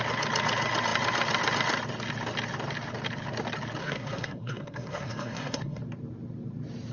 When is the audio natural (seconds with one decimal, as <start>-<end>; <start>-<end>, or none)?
0.0-3.8; 5.8-6.9